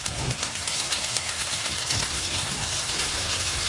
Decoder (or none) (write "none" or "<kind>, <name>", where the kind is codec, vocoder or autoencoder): codec, SNAC